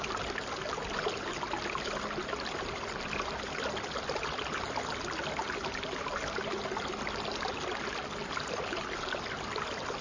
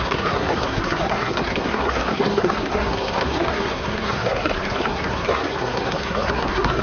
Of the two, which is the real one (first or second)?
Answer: first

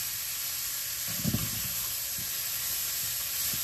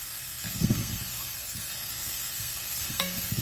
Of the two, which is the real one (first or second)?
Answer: first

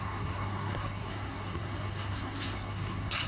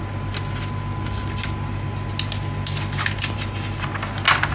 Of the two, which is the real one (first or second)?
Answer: second